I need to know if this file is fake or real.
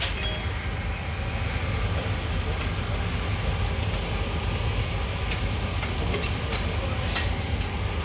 real